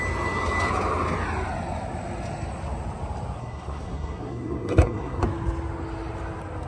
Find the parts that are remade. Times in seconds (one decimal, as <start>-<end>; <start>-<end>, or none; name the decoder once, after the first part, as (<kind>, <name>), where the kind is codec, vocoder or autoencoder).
3.4-5.2 (codec, SNAC)